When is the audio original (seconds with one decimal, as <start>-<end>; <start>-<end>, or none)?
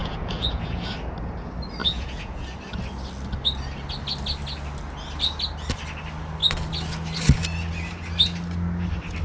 0.9-1.8; 2.5-9.2